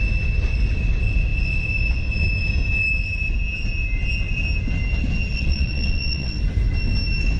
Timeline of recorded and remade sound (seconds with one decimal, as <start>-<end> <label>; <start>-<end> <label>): 0.0-5.3 recorded; 5.3-6.4 remade; 6.4-7.4 recorded

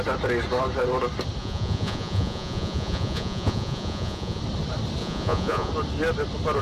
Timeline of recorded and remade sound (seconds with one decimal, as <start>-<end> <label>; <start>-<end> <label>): 0.0-1.4 recorded; 1.4-4.4 remade; 4.4-5.0 recorded; 5.0-5.7 remade; 5.7-6.6 recorded

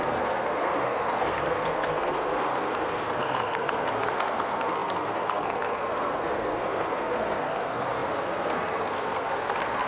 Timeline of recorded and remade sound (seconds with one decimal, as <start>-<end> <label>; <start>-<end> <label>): 0.0-9.9 remade